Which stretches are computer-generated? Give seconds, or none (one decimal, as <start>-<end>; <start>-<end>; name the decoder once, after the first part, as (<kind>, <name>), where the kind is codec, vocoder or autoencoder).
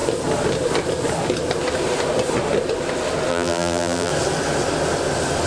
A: 3.3-4.1 (vocoder, BigVGAN v2)